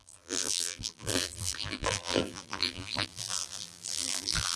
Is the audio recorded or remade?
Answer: remade